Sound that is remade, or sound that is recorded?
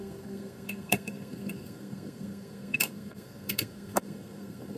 remade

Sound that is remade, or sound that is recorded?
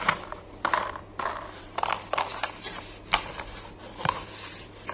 remade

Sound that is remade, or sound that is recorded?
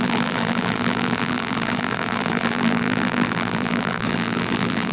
remade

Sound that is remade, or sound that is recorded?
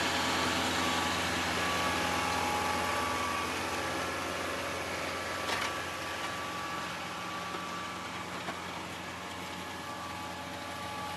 recorded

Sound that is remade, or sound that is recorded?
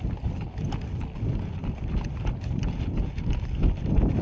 recorded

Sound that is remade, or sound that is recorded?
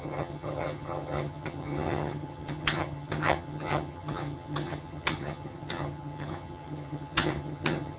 remade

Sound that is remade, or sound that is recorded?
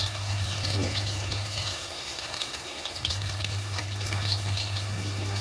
remade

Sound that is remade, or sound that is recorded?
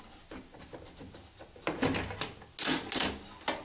recorded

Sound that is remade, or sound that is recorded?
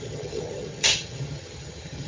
remade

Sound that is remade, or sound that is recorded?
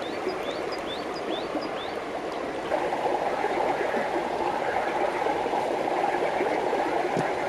recorded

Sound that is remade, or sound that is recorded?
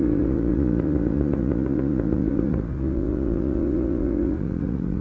remade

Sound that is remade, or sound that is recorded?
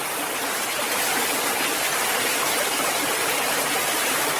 remade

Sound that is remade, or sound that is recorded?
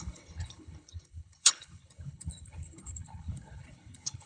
remade